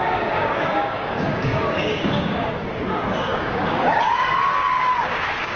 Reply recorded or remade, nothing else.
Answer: remade